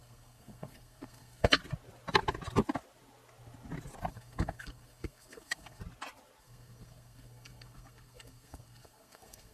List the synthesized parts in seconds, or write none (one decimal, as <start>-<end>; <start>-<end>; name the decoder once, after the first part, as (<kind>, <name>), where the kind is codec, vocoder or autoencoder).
0.0-1.6 (codec, SNAC); 4.1-5.8; 6.4-9.5